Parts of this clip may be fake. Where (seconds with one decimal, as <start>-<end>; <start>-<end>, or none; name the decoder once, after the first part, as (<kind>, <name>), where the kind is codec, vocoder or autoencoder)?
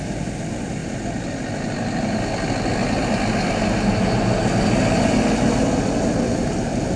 none